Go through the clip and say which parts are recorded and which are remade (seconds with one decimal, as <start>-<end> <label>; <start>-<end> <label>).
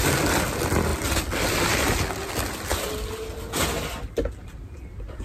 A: 0.0-5.2 recorded